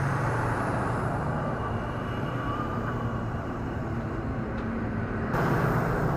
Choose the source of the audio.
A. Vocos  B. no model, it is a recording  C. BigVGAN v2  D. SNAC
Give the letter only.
C